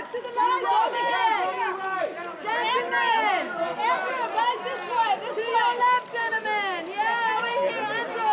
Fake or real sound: real